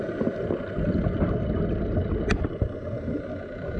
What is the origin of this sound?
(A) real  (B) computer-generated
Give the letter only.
A